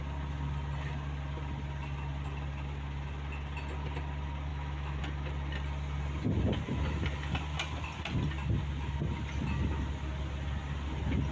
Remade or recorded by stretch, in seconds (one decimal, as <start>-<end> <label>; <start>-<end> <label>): 0.0-4.5 recorded; 4.5-5.0 remade; 5.0-11.3 recorded